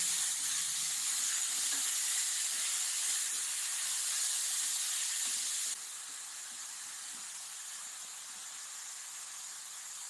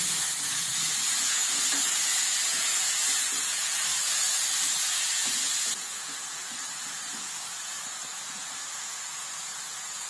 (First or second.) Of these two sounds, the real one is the first